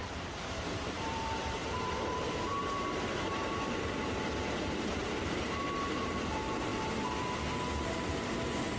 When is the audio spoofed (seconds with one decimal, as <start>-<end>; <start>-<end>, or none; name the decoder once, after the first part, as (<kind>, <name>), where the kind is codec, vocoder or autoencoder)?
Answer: 0.0-6.7 (vocoder, BigVGAN v2)